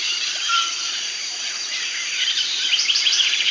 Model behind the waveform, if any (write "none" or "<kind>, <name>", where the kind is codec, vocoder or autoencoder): vocoder, BigVGAN v2